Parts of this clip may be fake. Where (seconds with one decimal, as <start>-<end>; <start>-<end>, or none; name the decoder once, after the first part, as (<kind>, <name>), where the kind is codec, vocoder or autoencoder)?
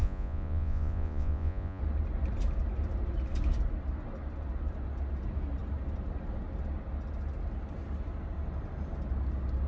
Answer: 0.0-1.8 (vocoder, Vocos)